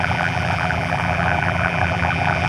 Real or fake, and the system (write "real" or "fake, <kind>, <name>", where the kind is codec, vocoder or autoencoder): fake, vocoder, BigVGAN v2